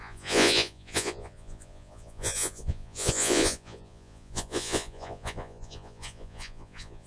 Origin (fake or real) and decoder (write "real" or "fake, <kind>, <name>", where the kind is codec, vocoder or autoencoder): fake, vocoder, Vocos